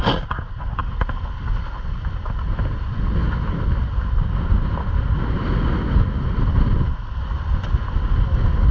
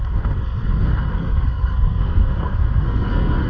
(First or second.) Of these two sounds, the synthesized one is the second